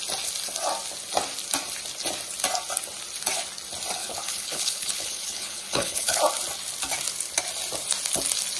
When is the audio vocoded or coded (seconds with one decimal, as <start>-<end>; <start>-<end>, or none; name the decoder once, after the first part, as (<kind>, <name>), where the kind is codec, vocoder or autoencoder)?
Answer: 4.0-6.2 (codec, HILCodec)